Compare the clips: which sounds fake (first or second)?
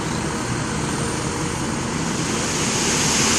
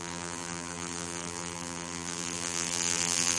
second